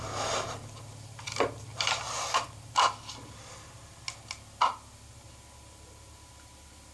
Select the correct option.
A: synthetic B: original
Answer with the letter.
B